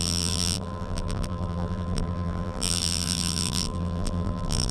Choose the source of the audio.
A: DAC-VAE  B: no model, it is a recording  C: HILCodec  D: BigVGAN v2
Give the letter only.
D